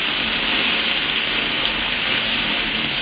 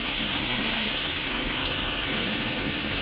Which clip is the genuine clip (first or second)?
first